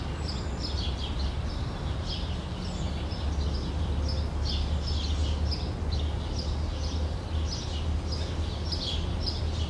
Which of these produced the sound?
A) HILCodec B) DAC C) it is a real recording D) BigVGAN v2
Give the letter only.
C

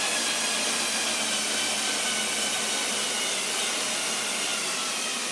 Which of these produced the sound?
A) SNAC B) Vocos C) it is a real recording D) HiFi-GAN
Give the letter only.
C